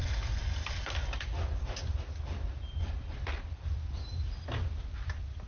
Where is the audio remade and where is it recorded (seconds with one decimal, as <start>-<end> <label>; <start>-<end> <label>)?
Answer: 0.0-5.5 recorded